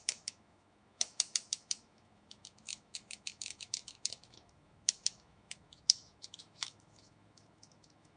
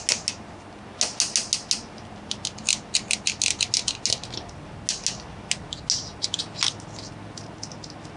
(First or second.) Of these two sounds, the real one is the second